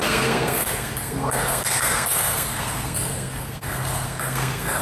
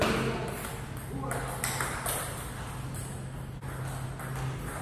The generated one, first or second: first